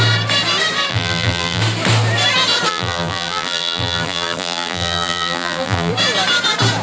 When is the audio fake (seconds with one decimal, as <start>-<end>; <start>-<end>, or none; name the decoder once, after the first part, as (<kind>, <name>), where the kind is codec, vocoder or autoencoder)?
0.9-1.6 (vocoder, BigVGAN v2); 2.7-5.9